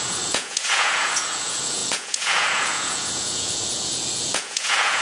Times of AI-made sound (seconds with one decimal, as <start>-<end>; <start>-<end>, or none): 0.0-5.0